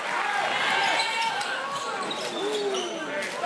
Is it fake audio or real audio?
real